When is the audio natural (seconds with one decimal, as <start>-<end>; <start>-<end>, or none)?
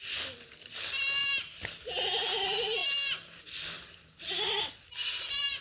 0.0-5.6